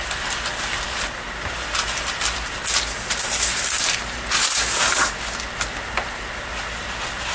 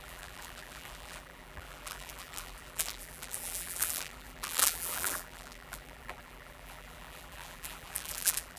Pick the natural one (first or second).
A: first